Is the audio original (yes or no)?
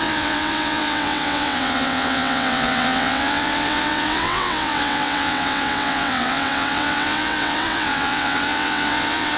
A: no